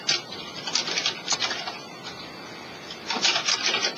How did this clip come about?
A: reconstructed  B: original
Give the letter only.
B